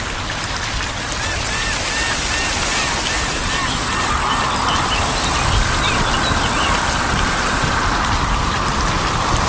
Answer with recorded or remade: recorded